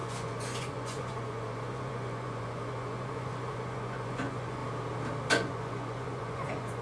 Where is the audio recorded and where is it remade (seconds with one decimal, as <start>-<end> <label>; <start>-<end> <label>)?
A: 0.0-4.6 remade; 4.6-5.3 recorded; 5.3-6.8 remade